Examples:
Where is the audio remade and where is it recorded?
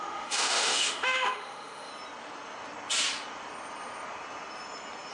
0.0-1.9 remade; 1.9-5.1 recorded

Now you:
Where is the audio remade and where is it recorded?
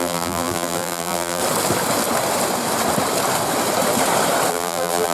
0.0-1.4 remade; 1.4-4.5 recorded; 4.5-5.1 remade